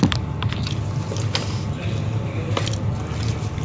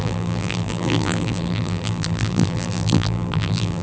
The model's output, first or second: second